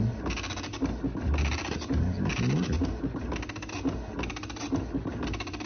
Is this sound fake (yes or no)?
no